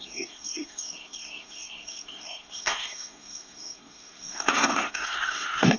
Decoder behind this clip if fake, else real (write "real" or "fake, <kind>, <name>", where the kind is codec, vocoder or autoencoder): fake, codec, SNAC